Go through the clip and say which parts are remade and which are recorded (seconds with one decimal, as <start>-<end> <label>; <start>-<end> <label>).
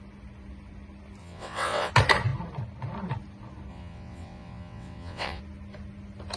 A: 0.0-1.2 recorded; 1.2-1.9 remade; 1.9-3.7 recorded; 3.7-5.4 remade; 5.4-6.4 recorded